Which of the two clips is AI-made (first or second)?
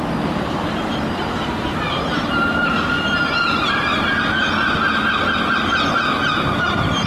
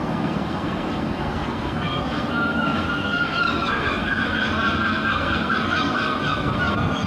second